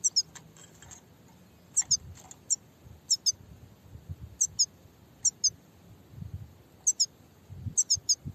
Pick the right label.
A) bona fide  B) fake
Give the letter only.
A